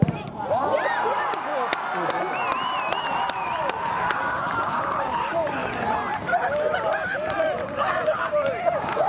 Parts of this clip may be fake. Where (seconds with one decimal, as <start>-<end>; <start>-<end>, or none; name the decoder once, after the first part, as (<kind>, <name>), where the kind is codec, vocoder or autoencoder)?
0.0-1.5 (vocoder, BigVGAN v2); 3.2-5.6; 6.5-9.1